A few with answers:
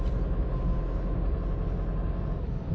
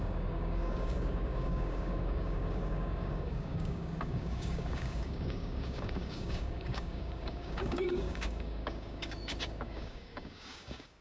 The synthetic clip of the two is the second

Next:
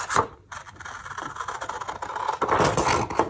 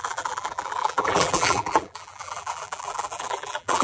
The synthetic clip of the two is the second